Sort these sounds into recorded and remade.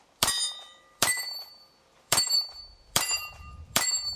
remade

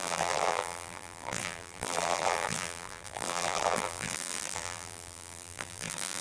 remade